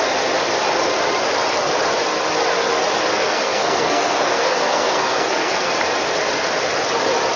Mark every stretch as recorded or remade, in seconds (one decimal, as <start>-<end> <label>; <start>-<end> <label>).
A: 0.0-3.1 recorded; 3.1-5.7 remade; 5.7-7.4 recorded